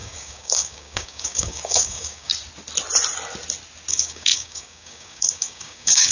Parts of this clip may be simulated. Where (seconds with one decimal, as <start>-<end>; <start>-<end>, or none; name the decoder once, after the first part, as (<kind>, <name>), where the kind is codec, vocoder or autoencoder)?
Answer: 0.0-2.3 (codec, DAC); 3.9-6.1